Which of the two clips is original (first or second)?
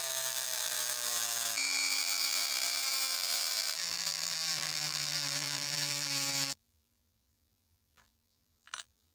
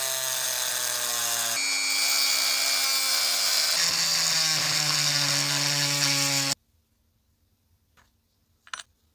second